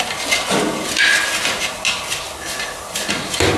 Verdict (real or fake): real